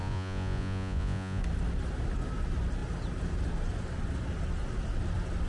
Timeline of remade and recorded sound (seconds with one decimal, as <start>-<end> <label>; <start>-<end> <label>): 0.0-1.4 remade; 1.4-5.5 recorded